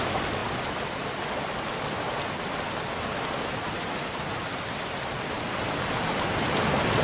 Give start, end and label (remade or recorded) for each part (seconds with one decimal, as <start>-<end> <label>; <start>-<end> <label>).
0.0-7.0 recorded